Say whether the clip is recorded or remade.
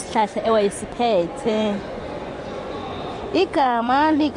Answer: remade